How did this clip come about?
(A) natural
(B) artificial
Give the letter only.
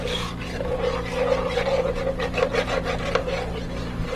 B